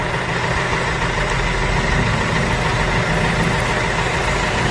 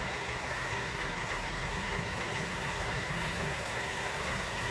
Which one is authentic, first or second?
first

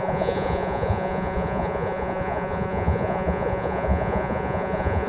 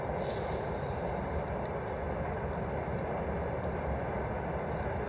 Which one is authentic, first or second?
second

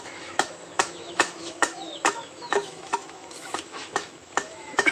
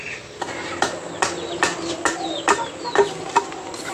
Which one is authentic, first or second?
second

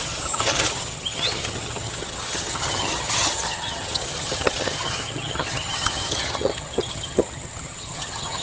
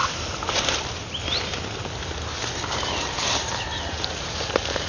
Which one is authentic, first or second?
second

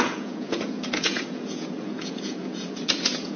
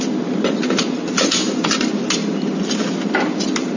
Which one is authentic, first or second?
second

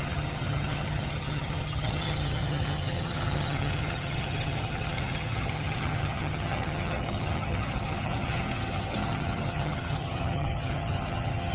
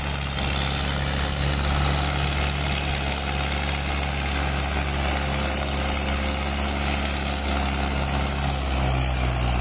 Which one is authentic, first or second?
second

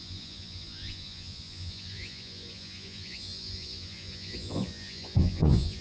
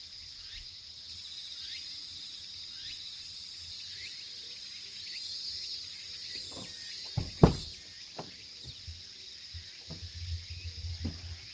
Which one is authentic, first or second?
second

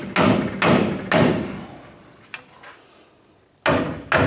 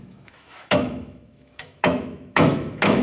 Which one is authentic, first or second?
first